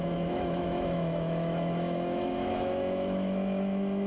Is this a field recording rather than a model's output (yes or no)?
no